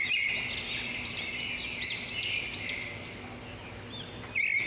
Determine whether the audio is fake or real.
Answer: real